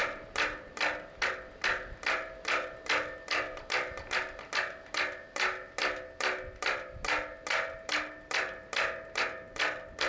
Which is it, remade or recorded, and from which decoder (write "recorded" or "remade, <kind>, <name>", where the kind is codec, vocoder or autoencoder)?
recorded